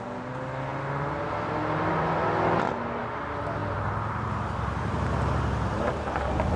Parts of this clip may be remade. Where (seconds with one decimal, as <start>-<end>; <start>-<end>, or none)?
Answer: none